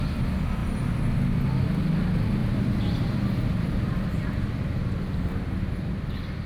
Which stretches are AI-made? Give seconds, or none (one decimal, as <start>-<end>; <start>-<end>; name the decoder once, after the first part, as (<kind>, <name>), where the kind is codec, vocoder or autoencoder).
2.4-6.5 (vocoder, BigVGAN v2)